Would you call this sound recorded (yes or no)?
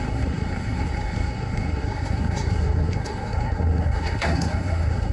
no